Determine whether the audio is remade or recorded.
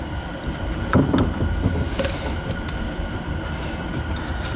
recorded